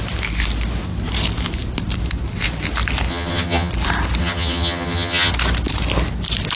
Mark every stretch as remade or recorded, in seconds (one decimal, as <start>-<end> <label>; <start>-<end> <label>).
0.0-3.1 recorded; 3.1-3.7 remade; 3.7-4.2 recorded; 4.2-5.3 remade; 5.3-6.5 recorded